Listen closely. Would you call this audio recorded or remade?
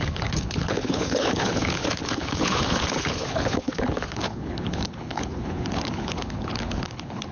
remade